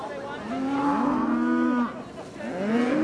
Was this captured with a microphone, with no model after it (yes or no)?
yes